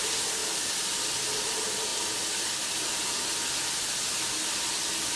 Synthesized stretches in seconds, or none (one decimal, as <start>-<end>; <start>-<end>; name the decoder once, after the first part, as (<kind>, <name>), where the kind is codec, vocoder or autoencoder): none